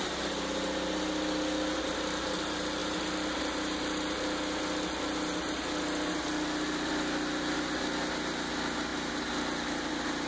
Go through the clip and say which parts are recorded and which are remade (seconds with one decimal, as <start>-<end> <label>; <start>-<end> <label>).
0.0-10.3 recorded